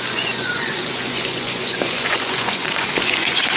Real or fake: fake